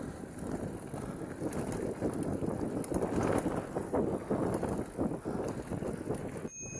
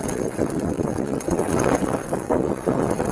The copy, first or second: second